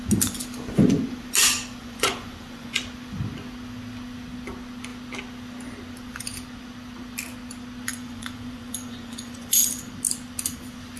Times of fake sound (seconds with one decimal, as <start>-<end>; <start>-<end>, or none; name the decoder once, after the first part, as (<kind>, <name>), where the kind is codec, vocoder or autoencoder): 1.8-2.8 (vocoder, Vocos); 7.9-9.7